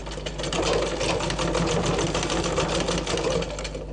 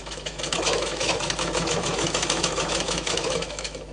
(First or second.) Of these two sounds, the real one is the first